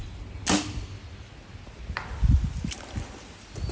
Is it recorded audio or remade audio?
recorded